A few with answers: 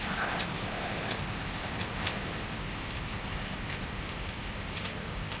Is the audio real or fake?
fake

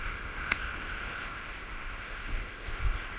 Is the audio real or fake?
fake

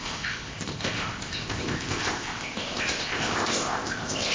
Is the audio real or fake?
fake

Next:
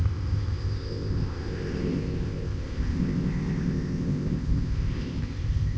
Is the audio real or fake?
fake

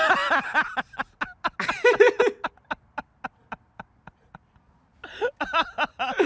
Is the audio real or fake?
real